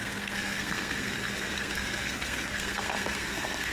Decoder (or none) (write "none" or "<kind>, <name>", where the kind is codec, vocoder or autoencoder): codec, SNAC